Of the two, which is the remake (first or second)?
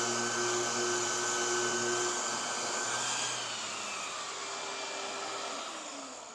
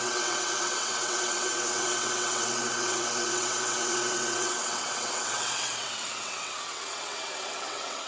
second